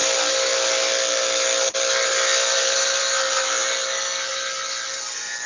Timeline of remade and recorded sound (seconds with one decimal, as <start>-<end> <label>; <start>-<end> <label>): 0.0-3.0 remade; 3.0-5.5 recorded